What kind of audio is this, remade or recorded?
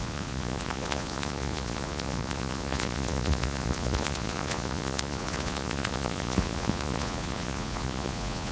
remade